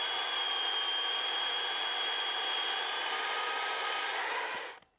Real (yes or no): yes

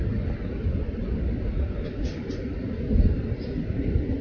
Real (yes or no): yes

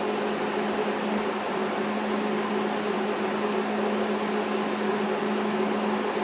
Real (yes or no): yes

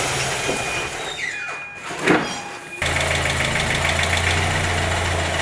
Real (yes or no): yes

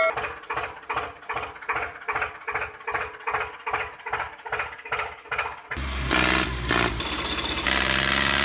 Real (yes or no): yes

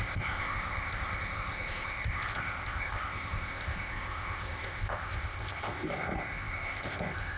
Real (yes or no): no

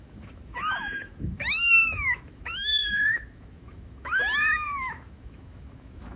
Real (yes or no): no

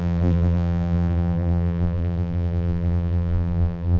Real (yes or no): no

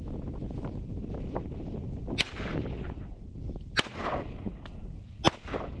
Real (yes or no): yes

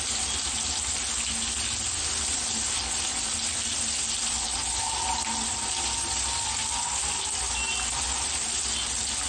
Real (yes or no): yes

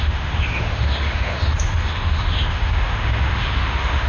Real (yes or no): no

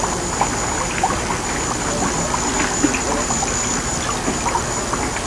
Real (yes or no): yes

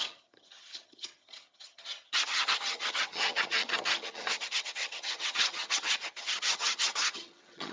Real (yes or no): no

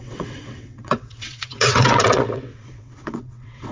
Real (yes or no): no